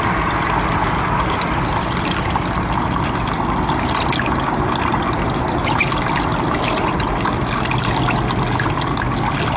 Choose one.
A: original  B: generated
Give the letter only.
A